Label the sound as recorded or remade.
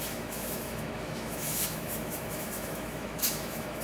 remade